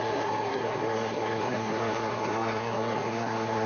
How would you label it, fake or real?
fake